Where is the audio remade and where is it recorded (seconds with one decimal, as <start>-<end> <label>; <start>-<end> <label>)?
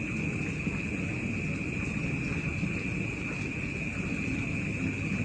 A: 0.0-5.2 recorded